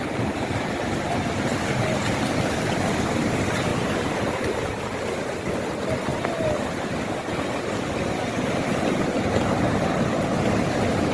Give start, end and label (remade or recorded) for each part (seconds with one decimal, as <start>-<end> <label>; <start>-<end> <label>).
0.0-11.1 recorded